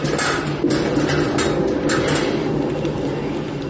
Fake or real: real